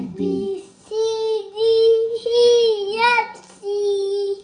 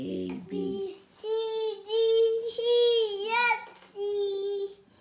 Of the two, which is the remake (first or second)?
first